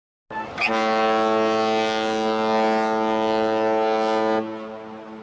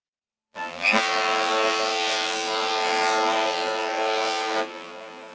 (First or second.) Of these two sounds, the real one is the first